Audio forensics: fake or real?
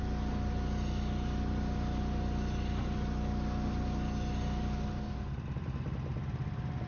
real